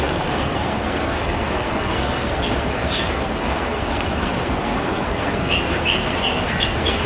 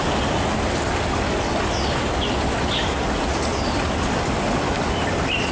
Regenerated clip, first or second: first